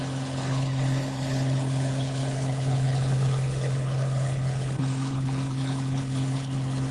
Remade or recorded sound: remade